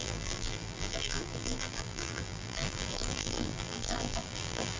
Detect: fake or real fake